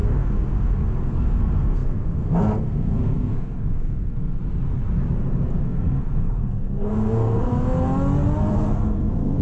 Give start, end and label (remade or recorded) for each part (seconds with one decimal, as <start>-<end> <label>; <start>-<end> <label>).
0.0-4.4 remade; 4.4-5.6 recorded; 5.6-7.5 remade; 7.5-8.5 recorded; 8.5-9.4 remade